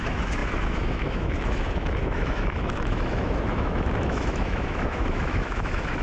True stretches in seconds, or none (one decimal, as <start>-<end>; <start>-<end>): none